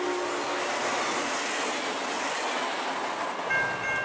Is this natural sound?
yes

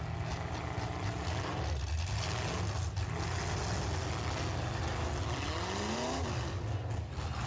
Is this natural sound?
yes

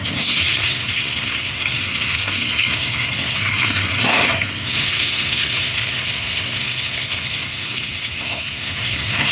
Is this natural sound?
no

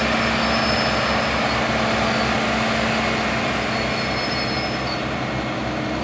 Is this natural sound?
yes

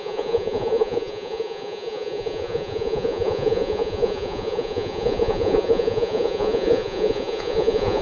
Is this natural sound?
no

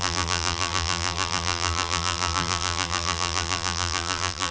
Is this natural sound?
no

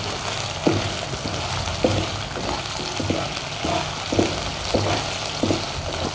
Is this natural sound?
yes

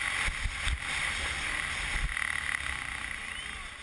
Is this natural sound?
yes